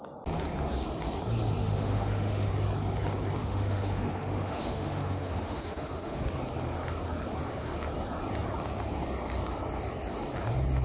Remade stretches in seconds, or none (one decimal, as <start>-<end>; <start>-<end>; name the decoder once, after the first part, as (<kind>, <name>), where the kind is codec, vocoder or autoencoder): 1.6-2.5 (autoencoder, DAC-VAE); 3.4-6.2